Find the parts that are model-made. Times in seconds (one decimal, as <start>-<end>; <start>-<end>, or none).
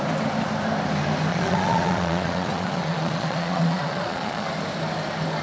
1.3-4.5